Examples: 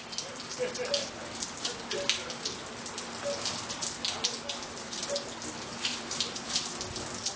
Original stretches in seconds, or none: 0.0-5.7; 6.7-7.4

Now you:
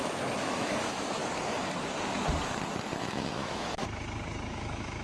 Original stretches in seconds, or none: 1.2-3.0; 3.8-4.5

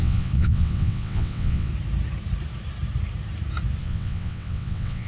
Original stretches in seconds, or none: 1.7-3.8